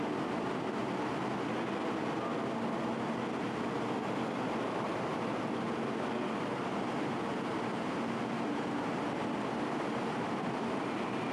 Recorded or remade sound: recorded